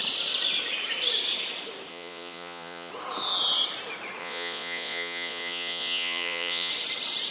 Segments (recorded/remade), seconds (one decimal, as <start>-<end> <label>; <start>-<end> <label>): 0.0-1.9 recorded; 1.9-2.9 remade; 2.9-4.2 recorded; 4.2-6.7 remade; 6.7-7.3 recorded